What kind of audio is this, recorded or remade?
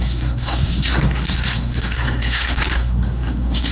remade